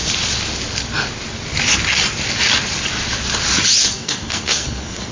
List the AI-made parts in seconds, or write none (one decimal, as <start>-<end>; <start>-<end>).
3.8-5.1